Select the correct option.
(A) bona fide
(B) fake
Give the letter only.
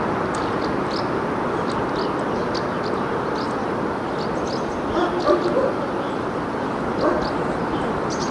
A